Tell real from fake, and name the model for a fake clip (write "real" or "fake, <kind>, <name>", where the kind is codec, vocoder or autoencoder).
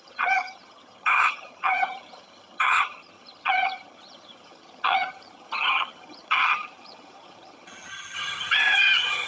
fake, vocoder, HiFi-GAN